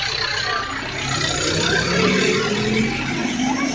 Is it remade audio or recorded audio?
recorded